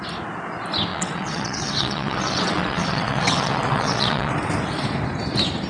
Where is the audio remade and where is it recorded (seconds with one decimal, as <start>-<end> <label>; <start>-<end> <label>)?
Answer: 0.0-0.9 recorded; 0.9-4.3 remade; 4.3-5.7 recorded